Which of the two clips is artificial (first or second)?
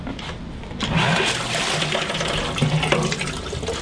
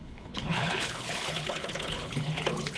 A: second